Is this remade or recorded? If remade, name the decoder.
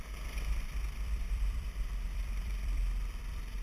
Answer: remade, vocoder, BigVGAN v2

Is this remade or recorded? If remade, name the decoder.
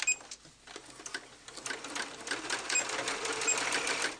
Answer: recorded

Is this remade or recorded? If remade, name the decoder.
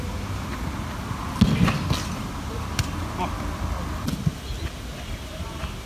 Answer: recorded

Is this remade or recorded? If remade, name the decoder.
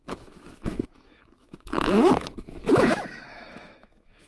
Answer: remade, autoencoder, DAC-VAE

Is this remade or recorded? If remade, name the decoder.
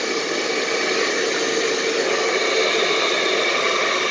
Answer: recorded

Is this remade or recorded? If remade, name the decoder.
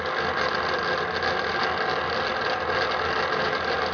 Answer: recorded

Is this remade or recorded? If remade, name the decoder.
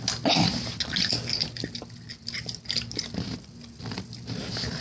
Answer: recorded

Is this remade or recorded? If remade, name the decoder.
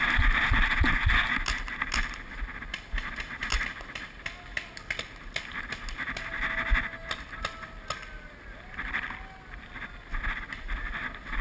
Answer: recorded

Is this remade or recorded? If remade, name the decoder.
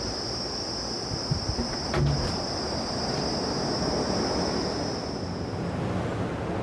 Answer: recorded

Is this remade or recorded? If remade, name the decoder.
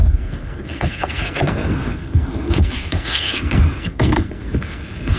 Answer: remade, codec, SNAC